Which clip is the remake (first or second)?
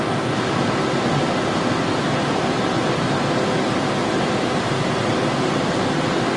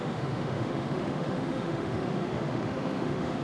second